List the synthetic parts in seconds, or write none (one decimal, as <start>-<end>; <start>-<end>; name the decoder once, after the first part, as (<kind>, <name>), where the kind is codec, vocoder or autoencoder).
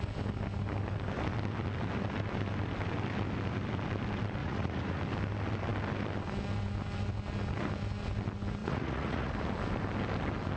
4.4-5.0 (vocoder, Vocos); 8.6-9.3